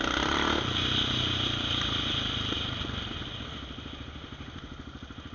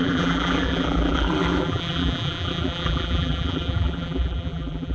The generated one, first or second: second